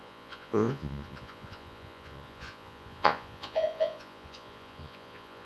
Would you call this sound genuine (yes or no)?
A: no